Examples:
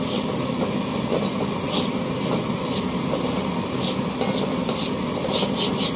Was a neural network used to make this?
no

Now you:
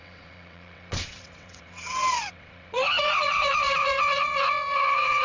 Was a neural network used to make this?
yes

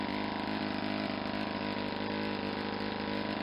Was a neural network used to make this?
no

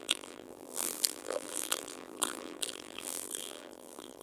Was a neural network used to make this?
yes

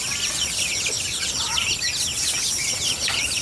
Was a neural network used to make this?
no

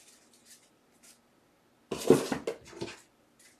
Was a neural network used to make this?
no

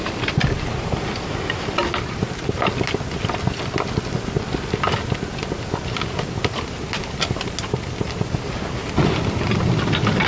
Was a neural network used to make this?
no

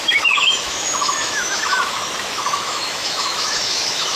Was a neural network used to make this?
yes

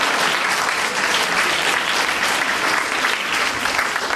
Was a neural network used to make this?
no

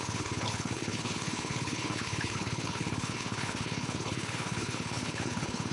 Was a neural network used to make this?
yes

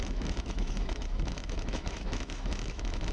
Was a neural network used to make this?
yes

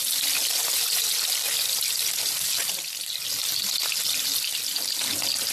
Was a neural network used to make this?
no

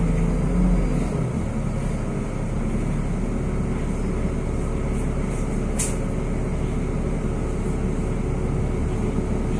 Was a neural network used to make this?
no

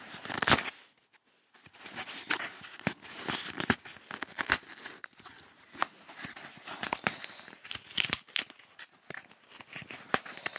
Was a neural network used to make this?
no